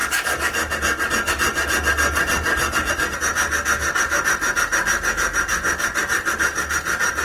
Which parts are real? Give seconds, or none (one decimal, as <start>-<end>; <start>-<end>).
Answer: 0.0-7.2